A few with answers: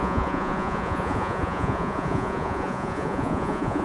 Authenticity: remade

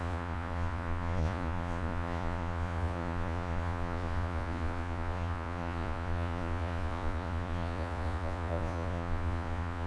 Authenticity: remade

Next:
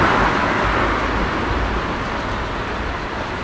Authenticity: recorded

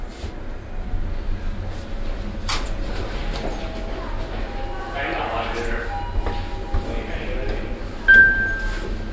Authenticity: recorded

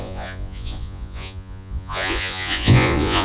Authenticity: remade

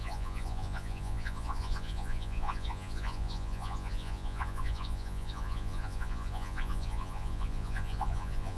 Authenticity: remade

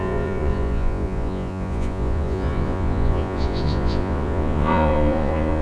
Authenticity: remade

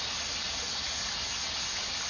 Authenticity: recorded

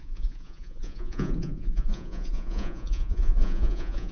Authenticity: remade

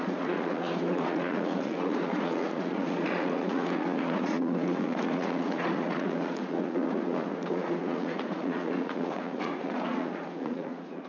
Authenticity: remade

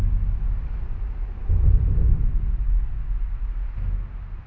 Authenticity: recorded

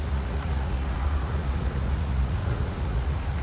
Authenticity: remade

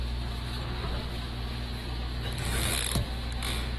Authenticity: recorded